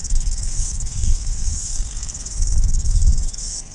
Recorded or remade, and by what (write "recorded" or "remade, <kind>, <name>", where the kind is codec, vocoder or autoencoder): remade, codec, SNAC